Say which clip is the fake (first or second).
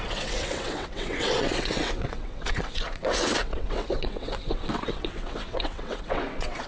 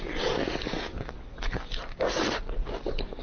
first